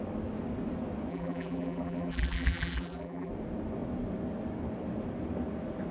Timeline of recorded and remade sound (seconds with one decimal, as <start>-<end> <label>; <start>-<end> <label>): 0.0-1.1 recorded; 1.1-3.3 remade; 3.3-5.9 recorded